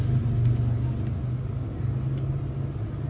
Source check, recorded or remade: recorded